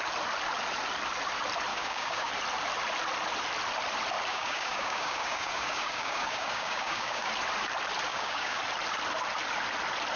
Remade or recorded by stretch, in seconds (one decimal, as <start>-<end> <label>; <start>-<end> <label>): 0.0-1.7 recorded; 1.7-2.3 remade; 2.3-4.3 recorded; 4.3-7.3 remade; 7.3-8.1 recorded; 8.1-8.6 remade; 8.6-10.2 recorded